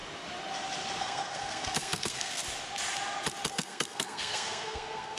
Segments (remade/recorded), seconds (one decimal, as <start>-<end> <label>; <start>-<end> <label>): 0.0-1.0 recorded; 1.0-2.4 remade; 2.4-3.5 recorded; 3.5-5.2 remade